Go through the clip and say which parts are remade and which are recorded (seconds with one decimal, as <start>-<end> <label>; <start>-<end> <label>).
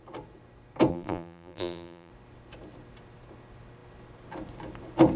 0.0-0.9 recorded; 0.9-2.1 remade; 2.1-5.2 recorded